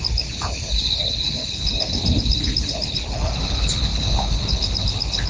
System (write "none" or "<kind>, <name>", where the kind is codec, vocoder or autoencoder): codec, HILCodec